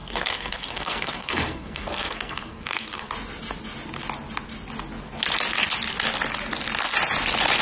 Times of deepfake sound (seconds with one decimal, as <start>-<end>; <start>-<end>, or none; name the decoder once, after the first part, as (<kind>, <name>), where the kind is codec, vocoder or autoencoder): 0.0-3.1 (codec, SNAC)